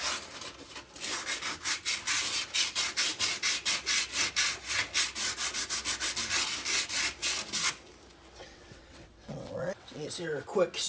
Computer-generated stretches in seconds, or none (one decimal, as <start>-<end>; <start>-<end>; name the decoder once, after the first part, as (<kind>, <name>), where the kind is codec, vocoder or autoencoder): 8.4-10.1 (vocoder, WaveNeXt)